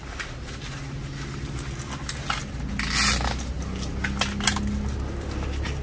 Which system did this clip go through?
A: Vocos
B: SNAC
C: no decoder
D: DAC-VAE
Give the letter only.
C